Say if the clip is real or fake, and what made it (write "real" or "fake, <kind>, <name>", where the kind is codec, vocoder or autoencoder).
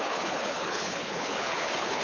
fake, codec, HILCodec